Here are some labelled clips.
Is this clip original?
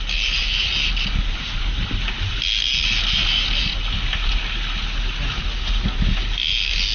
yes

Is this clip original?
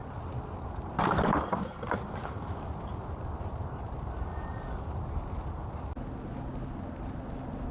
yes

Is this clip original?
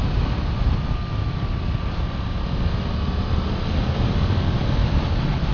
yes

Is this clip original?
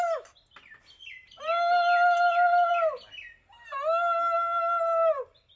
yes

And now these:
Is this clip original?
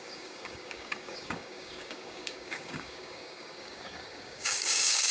no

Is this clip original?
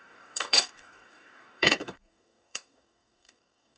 no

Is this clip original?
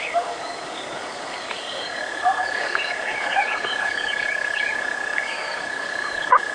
no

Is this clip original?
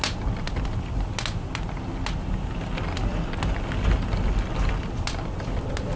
yes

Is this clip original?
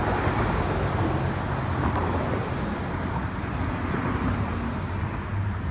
yes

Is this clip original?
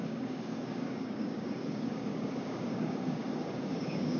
no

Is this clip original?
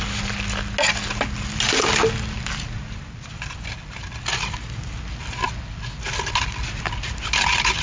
yes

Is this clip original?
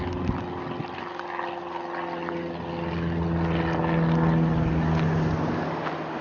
yes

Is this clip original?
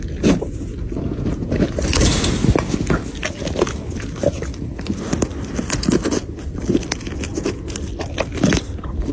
yes